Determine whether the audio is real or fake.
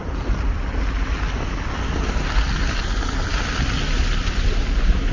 real